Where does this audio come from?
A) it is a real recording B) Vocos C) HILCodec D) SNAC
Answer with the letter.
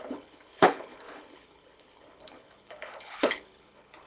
C